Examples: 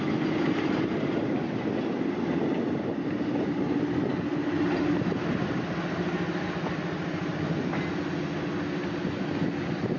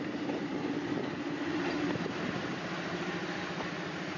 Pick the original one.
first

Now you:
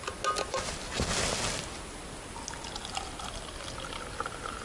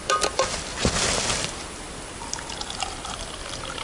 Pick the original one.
first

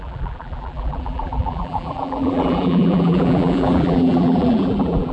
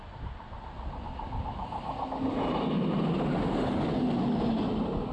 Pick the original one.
second